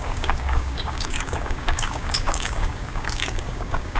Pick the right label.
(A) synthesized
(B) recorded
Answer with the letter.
A